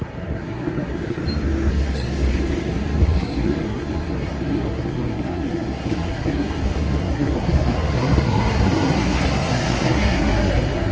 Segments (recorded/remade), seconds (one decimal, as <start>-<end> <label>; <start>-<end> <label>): 0.0-1.2 remade; 1.2-1.7 recorded; 1.7-10.9 remade